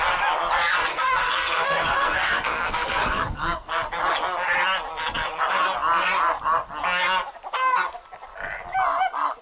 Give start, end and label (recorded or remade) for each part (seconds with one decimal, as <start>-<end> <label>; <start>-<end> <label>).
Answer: 0.0-0.9 recorded; 0.9-3.7 remade; 3.7-9.4 recorded